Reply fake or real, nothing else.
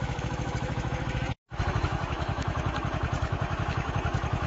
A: fake